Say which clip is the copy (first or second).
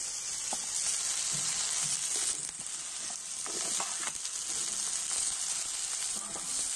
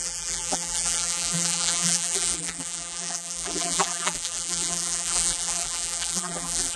second